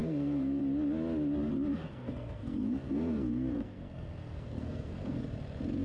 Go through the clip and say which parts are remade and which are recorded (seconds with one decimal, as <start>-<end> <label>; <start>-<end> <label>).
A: 0.0-0.6 remade; 0.6-1.7 recorded; 1.7-5.2 remade; 5.2-5.8 recorded